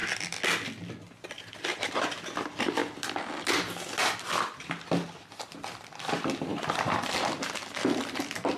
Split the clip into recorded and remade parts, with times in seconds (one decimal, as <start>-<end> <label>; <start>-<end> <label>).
0.0-1.9 recorded; 1.9-8.6 remade